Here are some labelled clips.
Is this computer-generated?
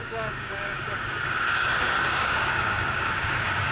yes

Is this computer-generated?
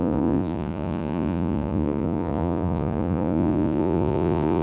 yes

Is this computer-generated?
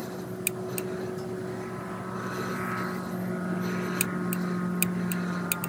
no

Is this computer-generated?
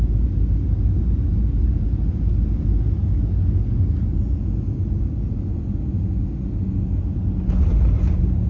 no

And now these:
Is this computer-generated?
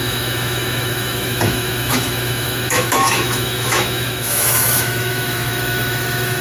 yes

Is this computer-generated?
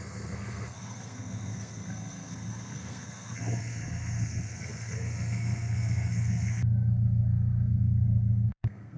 yes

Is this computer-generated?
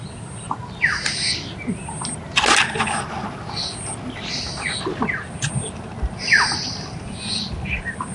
no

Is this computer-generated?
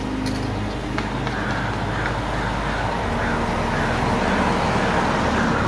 no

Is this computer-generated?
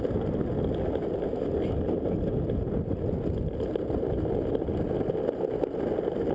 no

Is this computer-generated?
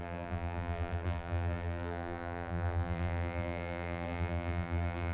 yes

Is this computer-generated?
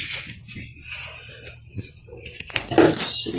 no